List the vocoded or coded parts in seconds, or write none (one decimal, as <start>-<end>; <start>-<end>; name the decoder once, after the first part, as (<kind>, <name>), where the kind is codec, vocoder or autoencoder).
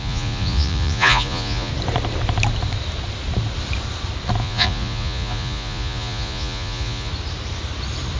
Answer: 0.0-1.7 (vocoder, Vocos); 4.4-7.1